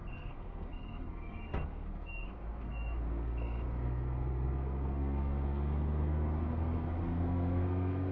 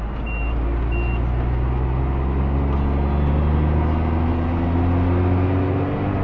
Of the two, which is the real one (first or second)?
second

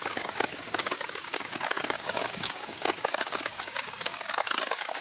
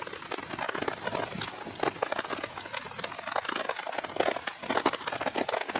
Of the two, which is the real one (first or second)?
second